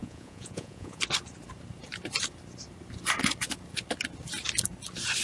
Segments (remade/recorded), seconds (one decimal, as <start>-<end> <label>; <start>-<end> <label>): 0.0-1.0 remade; 1.0-5.2 recorded